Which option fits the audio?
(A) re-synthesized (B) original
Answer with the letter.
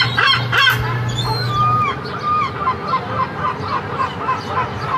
B